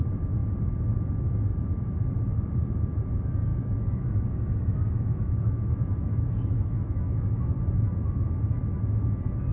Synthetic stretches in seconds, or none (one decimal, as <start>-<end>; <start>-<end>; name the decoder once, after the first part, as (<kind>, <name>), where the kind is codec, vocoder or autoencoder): 1.5-2.0 (autoencoder, DAC-VAE); 3.5-7.4